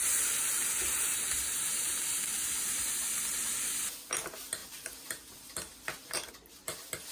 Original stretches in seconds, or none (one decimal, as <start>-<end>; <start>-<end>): 0.0-4.6; 6.3-7.1